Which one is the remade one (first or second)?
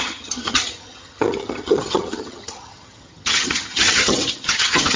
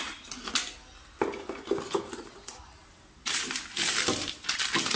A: first